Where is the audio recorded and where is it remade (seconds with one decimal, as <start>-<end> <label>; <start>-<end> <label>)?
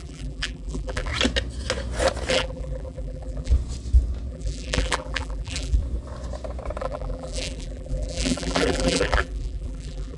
0.0-1.1 remade; 1.1-2.3 recorded; 2.3-3.5 remade; 3.5-4.3 recorded; 4.3-5.8 remade; 5.8-6.8 recorded; 6.8-10.2 remade